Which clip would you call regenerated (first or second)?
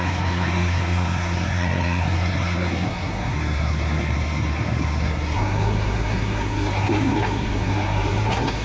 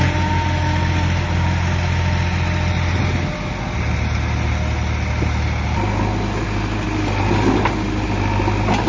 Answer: first